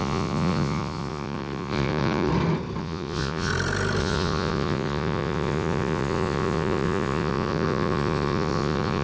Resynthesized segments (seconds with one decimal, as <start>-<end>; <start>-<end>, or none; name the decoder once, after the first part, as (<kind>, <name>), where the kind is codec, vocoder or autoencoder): 0.0-2.3 (vocoder, Vocos); 2.8-3.5; 4.0-9.0